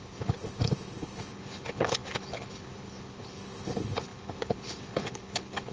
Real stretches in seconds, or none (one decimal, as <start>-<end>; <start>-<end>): none